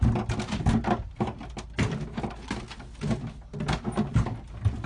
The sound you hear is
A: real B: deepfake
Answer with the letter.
A